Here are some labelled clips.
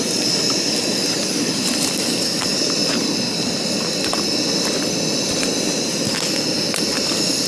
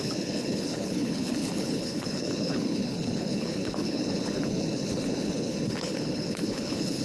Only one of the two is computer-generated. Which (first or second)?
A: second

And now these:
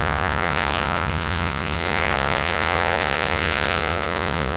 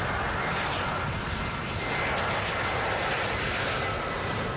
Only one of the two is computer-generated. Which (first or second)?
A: first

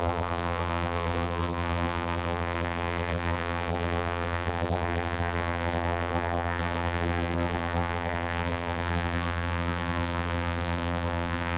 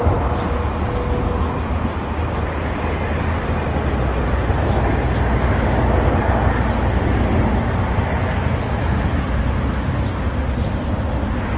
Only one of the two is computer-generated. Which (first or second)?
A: first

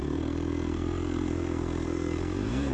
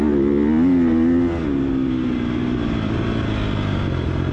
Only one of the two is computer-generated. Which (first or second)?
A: first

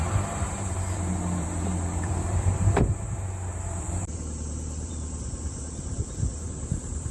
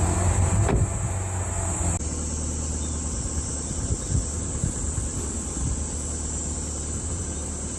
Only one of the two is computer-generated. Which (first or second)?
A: first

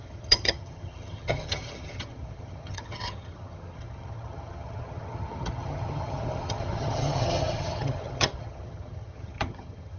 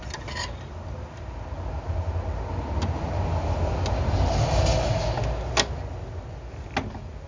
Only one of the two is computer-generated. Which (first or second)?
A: first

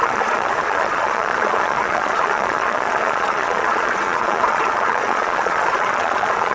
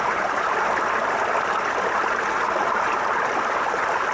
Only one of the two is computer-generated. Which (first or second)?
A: first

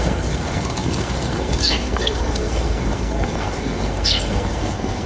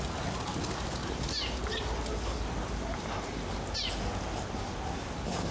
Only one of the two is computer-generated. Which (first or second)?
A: first